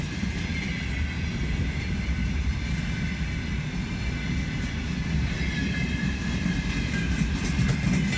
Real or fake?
real